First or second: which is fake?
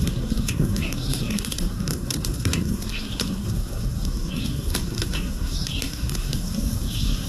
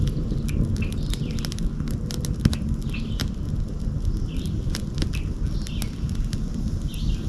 first